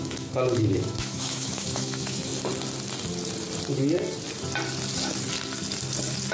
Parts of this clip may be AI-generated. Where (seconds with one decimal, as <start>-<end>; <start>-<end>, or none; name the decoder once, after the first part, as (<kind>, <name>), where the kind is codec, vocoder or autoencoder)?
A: 0.0-2.3 (autoencoder, DAC-VAE)